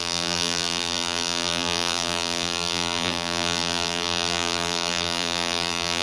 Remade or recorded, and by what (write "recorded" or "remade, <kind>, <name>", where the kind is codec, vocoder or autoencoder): remade, vocoder, BigVGAN v2